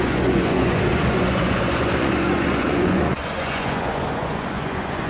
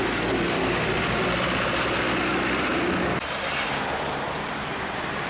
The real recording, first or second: second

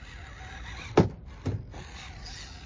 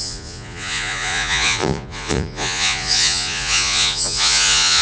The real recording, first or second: first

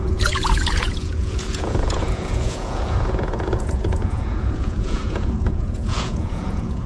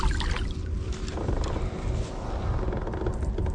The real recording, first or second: second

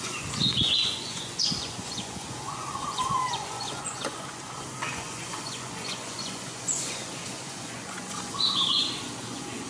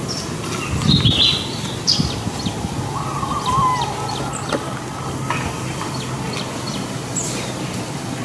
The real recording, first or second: second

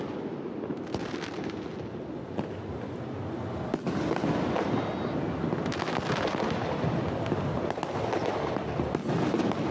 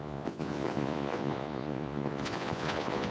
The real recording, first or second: first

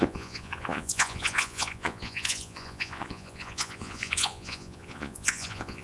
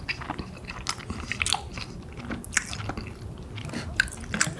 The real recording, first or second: second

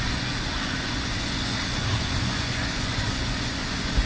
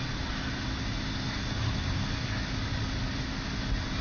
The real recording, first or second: second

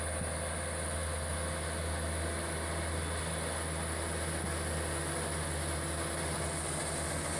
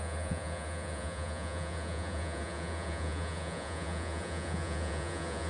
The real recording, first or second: first